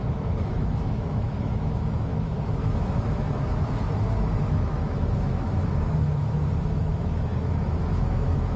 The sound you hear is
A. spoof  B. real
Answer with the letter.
A